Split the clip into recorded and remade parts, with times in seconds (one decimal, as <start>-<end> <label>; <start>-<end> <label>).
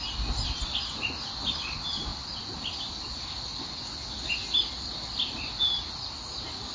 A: 0.0-2.1 recorded; 2.1-2.7 remade; 2.7-6.7 recorded